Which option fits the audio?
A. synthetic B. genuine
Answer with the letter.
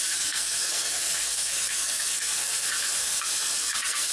A